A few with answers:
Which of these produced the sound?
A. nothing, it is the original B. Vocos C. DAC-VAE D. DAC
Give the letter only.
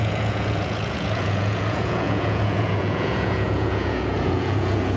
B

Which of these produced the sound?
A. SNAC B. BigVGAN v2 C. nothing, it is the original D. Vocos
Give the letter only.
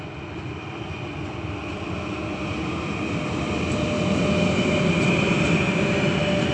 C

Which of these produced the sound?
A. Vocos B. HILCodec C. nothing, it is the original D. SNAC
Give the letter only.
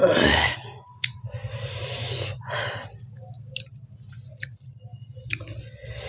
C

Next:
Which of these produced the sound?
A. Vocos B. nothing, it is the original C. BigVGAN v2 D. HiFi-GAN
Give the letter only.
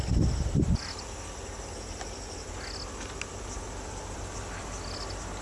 B